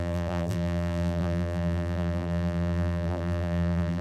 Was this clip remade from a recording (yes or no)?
yes